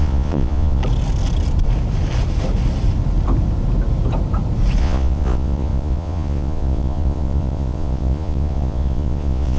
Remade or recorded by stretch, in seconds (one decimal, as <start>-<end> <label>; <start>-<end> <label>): 0.0-0.8 remade; 0.8-4.8 recorded; 4.8-9.6 remade